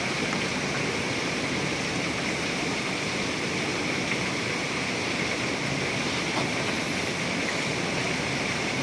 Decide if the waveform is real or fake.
real